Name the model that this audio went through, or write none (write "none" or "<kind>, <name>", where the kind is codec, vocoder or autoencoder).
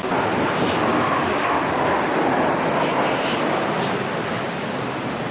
none